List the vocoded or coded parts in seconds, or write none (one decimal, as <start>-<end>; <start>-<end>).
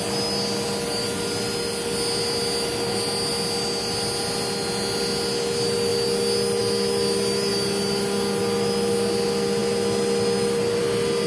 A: none